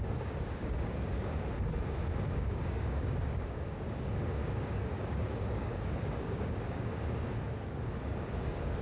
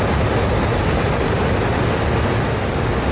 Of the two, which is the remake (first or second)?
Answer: first